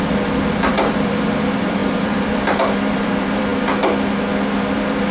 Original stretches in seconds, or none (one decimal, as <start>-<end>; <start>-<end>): 3.5-4.6